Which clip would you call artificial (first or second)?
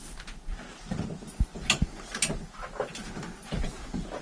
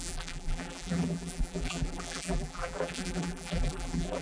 second